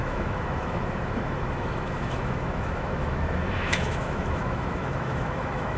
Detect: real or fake fake